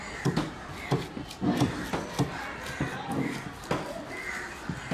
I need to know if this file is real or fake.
real